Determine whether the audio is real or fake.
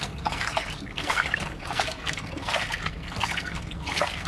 fake